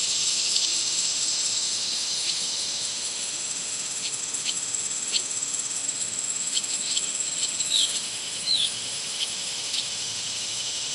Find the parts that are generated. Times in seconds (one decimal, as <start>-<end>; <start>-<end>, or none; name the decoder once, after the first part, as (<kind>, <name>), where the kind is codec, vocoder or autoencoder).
0.0-10.9 (autoencoder, DAC-VAE)